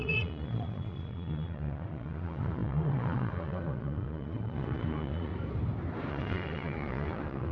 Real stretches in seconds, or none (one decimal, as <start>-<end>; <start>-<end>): 5.3-6.1